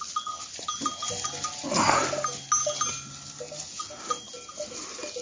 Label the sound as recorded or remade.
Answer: recorded